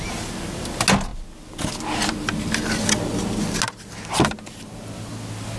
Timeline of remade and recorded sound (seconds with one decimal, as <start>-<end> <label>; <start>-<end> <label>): 0.0-5.6 recorded